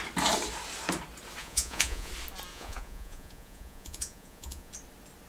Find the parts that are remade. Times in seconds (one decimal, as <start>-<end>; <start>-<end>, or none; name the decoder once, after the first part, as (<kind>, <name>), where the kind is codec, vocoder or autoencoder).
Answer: 1.4-2.1 (vocoder, Vocos); 2.5-4.7

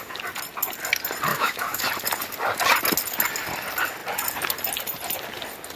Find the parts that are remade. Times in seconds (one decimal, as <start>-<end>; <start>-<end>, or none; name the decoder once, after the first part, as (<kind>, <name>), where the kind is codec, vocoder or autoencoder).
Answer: 1.3-1.8 (autoencoder, DAC-VAE)

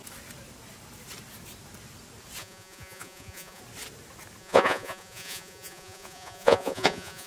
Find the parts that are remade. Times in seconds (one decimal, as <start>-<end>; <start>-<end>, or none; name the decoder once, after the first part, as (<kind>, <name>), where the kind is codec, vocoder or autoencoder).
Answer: 2.4-3.6 (vocoder, Vocos); 4.4-7.3

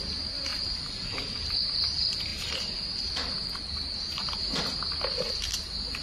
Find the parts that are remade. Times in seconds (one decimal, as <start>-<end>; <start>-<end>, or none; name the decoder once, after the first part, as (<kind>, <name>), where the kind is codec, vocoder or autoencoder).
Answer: none

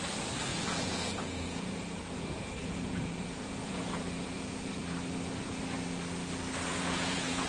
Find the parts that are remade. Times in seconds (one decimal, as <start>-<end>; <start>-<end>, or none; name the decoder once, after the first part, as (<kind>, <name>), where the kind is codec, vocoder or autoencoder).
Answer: 0.5-4.8 (vocoder, Vocos); 6.7-7.5

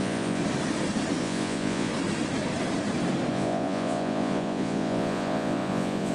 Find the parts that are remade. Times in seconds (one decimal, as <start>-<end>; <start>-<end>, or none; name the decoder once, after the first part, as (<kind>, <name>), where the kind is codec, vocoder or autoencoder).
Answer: 0.0-0.4 (vocoder, Vocos); 1.2-1.9; 3.3-6.1

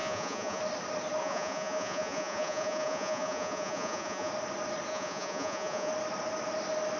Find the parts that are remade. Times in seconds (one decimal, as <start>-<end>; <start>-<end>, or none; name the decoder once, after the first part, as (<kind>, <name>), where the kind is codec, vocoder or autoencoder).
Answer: 0.0-0.6 (vocoder, Vocos); 1.2-4.3; 4.9-5.9

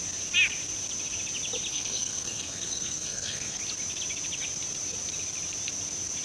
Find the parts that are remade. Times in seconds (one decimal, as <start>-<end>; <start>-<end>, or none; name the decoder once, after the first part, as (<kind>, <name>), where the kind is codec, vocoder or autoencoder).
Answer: 1.7-3.6 (codec, SNAC)